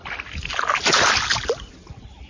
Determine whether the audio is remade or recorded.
recorded